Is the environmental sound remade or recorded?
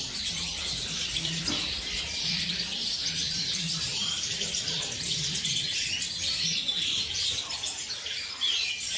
remade